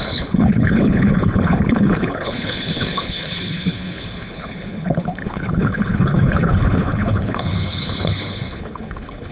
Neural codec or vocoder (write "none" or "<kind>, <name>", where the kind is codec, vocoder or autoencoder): codec, HILCodec